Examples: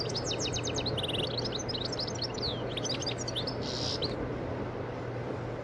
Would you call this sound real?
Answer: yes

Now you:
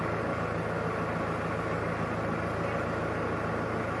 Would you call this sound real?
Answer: yes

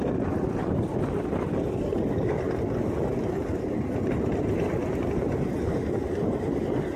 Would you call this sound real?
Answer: yes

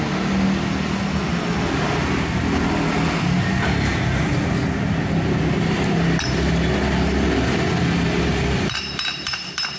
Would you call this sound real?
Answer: yes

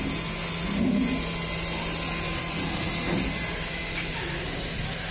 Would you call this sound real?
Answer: yes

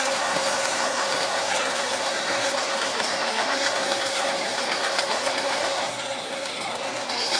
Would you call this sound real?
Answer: no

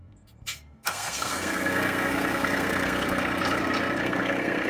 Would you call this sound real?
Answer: no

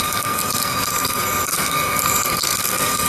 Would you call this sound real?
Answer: no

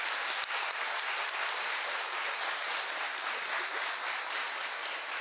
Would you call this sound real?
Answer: yes